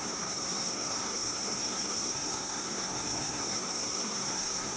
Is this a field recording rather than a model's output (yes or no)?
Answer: no